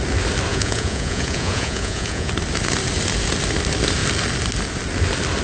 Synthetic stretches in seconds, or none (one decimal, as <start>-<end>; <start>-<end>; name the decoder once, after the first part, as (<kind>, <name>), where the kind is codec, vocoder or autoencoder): 0.5-2.3 (vocoder, Vocos)